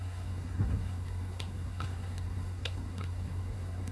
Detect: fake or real fake